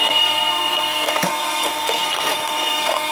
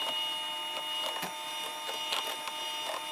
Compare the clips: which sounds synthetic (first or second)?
first